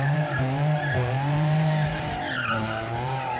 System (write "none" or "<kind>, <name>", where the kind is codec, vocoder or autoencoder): vocoder, BigVGAN v2